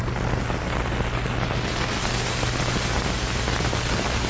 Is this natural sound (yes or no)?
yes